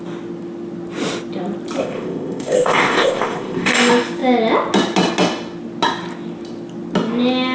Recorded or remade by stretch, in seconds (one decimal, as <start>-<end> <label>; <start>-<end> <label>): 0.0-1.8 recorded; 1.8-3.7 remade; 3.7-7.5 recorded